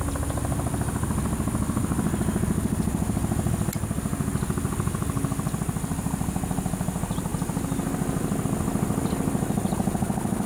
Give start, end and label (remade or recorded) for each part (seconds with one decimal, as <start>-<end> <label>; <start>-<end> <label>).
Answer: 0.0-10.5 recorded